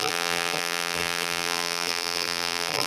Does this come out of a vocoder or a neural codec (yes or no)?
yes